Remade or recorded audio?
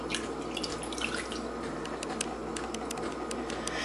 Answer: recorded